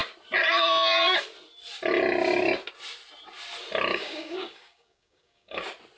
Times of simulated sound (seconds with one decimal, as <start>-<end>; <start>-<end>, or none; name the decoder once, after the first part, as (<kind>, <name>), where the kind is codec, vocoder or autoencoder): 3.9-5.6 (codec, DAC)